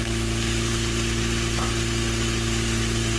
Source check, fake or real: real